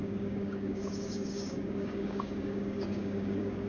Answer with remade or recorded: remade